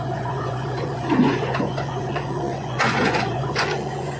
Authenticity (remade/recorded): remade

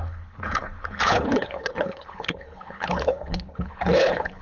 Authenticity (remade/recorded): remade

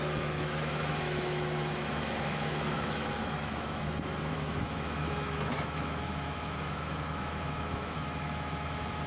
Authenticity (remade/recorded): remade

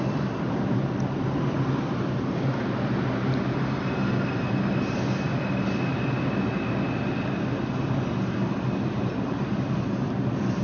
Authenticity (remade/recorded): recorded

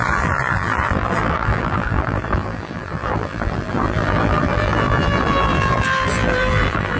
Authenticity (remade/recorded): remade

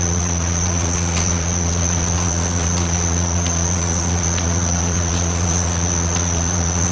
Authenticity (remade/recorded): remade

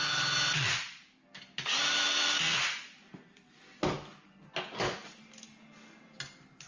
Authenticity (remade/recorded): recorded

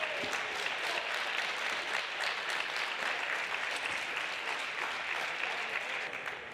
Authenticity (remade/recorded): recorded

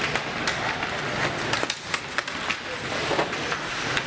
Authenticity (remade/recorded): recorded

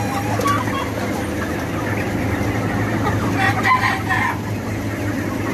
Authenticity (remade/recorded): recorded